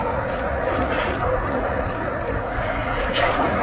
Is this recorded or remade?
remade